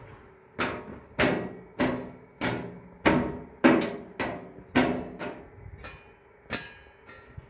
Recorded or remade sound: recorded